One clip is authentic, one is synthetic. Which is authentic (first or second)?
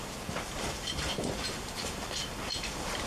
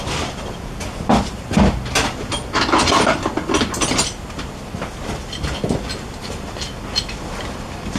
second